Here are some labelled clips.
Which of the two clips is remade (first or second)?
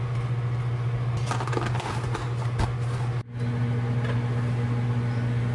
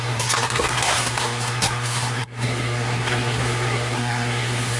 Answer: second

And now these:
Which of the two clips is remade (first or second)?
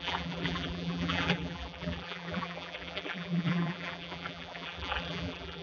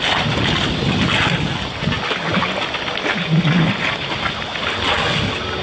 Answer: first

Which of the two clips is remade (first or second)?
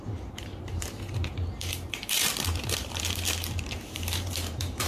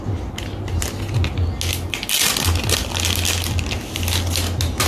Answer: first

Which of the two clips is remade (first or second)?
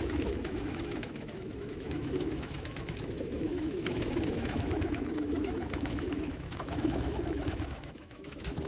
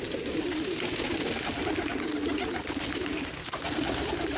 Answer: first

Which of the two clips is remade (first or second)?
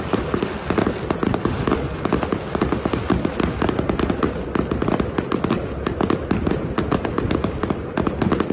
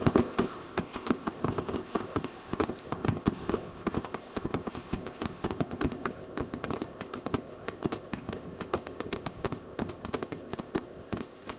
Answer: second